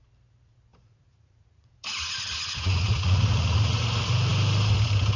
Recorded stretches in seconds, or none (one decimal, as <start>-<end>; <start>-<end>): 0.0-0.7; 3.8-5.2